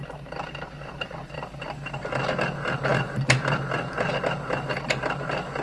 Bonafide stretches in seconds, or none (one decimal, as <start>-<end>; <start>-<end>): 0.0-0.8; 1.7-2.9; 4.1-5.6